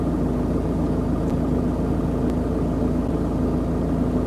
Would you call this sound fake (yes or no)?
no